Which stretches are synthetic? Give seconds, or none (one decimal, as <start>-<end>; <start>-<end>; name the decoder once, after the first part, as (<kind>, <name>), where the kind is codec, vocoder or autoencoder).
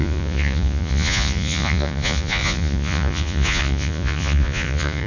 0.0-5.1 (vocoder, Vocos)